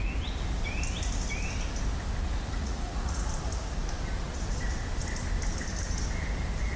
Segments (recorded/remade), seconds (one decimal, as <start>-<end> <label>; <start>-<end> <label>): 0.0-2.6 recorded; 2.6-3.3 remade; 3.3-6.8 recorded